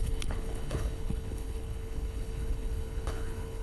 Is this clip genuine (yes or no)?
no